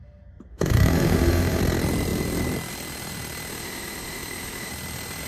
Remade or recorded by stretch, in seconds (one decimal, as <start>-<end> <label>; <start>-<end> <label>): 0.0-0.5 recorded; 0.5-1.6 remade; 1.6-3.5 recorded; 3.5-4.7 remade; 4.7-5.3 recorded